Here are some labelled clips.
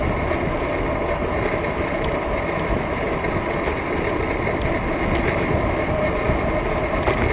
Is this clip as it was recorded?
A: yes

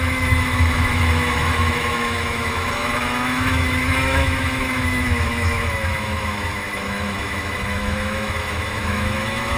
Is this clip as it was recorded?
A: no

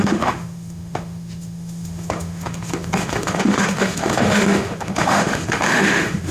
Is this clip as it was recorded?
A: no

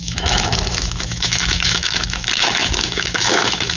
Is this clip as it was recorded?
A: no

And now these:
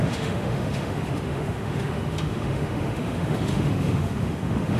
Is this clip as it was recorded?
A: no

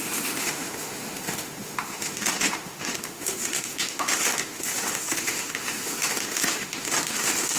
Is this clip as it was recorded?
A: no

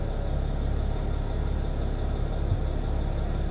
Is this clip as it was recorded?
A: yes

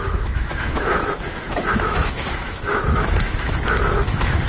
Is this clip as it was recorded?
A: no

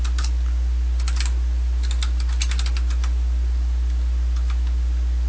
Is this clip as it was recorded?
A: yes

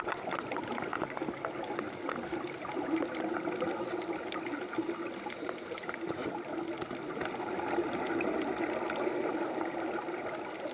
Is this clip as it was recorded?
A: yes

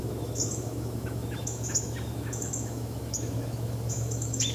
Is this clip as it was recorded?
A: no